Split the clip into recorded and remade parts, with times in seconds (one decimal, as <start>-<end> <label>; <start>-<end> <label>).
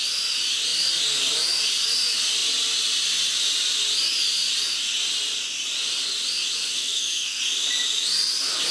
0.0-6.6 recorded; 6.6-7.4 remade; 7.4-8.7 recorded